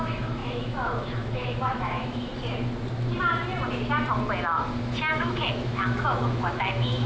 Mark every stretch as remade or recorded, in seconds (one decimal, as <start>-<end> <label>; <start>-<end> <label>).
0.0-2.3 remade; 2.3-5.1 recorded; 5.1-7.1 remade